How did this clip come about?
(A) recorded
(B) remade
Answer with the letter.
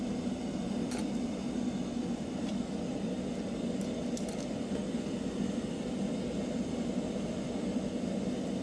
A